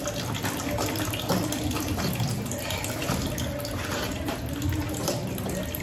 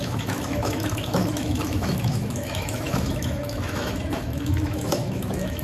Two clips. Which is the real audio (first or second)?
first